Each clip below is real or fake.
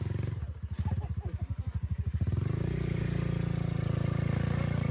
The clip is real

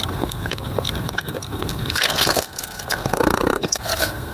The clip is fake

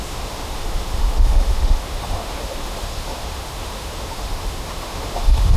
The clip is fake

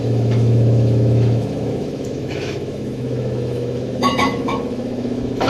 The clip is fake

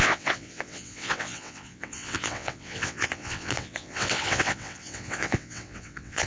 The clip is fake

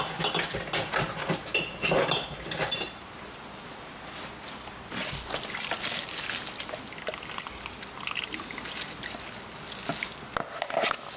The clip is real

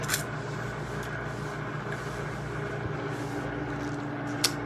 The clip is real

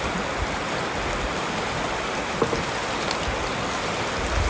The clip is real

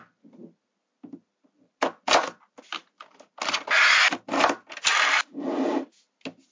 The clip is real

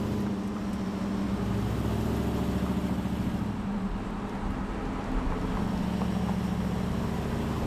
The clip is real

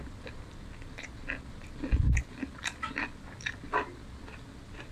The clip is real